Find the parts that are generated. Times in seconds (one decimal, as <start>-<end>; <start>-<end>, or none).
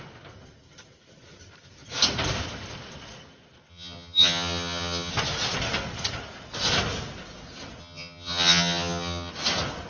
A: 3.7-5.1; 7.8-9.3